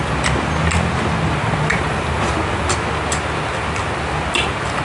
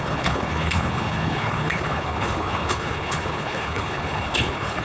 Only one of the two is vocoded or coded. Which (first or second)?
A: second